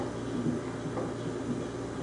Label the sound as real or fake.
real